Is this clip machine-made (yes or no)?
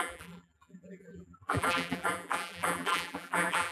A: yes